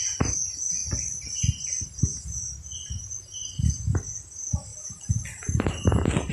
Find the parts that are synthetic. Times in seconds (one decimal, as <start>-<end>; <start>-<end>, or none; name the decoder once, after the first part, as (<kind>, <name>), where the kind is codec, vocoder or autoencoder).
none